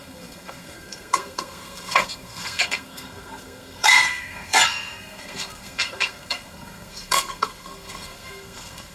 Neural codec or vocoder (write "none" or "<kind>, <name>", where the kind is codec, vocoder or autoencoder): codec, SNAC